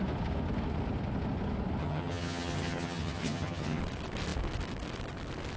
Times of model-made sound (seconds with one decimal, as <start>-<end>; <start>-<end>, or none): 1.8-3.8